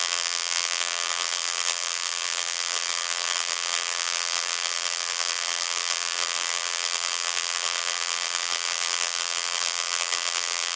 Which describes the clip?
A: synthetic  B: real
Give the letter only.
A